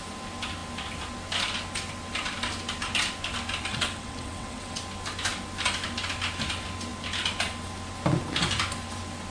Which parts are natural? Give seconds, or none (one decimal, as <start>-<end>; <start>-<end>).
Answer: 0.0-3.7; 4.8-9.3